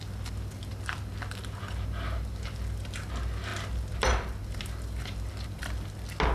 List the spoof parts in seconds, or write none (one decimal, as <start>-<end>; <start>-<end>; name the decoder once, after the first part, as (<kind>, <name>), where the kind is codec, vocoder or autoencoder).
none